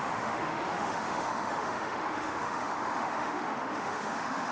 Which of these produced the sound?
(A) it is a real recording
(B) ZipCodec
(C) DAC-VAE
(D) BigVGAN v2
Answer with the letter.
C